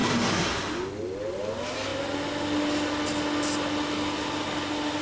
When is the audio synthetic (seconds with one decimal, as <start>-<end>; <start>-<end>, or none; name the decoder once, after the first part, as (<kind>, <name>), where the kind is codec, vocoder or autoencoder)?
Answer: none